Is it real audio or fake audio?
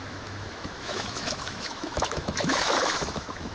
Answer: fake